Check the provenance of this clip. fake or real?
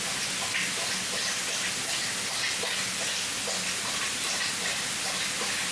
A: real